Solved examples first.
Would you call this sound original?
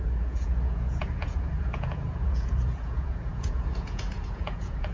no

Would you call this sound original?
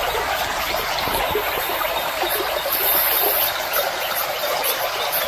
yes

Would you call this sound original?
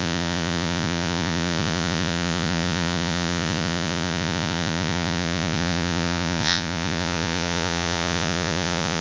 no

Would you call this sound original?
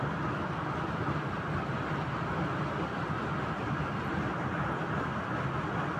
yes